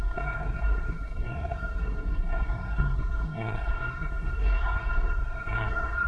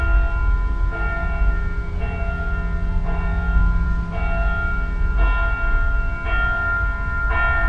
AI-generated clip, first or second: first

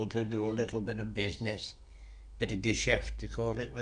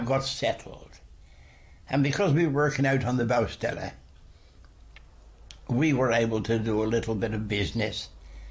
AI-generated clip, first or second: first